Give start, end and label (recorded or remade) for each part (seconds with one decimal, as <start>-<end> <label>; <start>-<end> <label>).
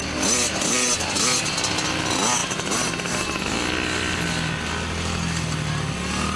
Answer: 0.0-6.4 recorded